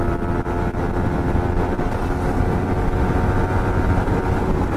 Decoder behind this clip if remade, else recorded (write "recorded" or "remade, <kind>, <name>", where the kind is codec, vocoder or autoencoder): recorded